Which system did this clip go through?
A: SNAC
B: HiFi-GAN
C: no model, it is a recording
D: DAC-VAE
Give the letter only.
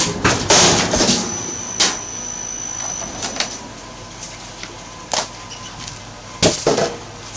C